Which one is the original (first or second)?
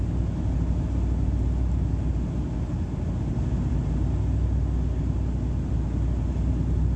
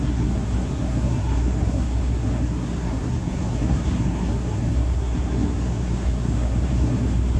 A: first